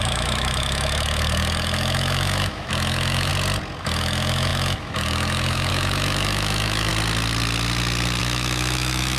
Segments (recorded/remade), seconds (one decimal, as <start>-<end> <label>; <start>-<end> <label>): 0.0-3.3 remade; 3.3-3.8 recorded; 3.8-6.9 remade; 6.9-8.2 recorded; 8.2-9.2 remade